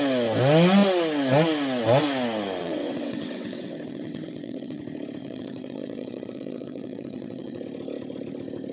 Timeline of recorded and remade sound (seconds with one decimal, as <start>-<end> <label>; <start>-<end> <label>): 0.0-2.6 recorded; 2.6-4.8 remade; 4.8-5.2 recorded; 5.2-7.6 remade; 7.6-8.7 recorded